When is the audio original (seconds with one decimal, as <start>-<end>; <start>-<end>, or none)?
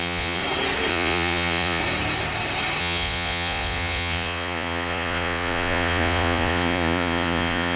0.4-0.9; 1.8-2.8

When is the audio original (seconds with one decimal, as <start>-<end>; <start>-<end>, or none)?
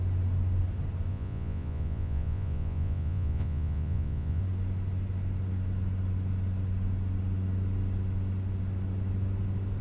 0.0-1.1; 4.4-9.8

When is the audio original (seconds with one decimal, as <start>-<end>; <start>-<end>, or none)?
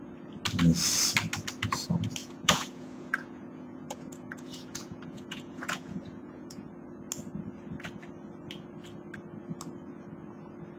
0.0-2.2; 6.7-10.8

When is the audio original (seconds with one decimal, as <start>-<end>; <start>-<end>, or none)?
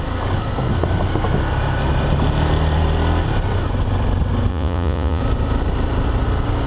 0.0-4.5; 5.2-6.7